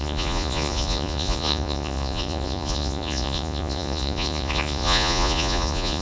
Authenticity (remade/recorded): remade